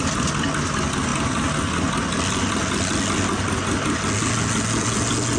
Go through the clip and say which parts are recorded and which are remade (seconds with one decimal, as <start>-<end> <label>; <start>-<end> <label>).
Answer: 0.0-5.4 recorded